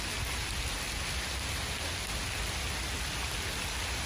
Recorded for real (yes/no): yes